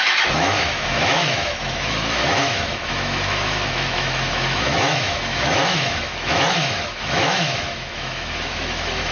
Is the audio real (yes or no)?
no